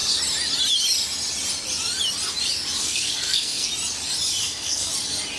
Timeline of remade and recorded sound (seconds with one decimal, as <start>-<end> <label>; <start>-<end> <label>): 0.0-2.8 recorded; 2.8-3.7 remade; 3.7-4.4 recorded; 4.4-4.9 remade; 4.9-5.4 recorded